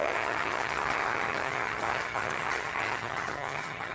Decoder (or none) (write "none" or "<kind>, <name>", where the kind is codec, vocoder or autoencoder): vocoder, HiFi-GAN